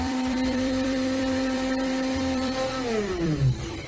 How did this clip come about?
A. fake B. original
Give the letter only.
A